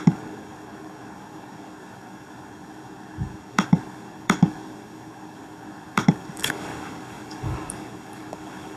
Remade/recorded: remade